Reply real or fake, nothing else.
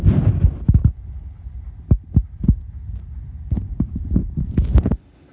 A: real